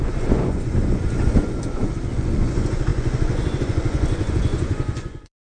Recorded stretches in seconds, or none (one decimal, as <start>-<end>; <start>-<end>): none